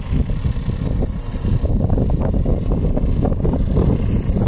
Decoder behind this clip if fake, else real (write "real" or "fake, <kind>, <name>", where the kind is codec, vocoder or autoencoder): real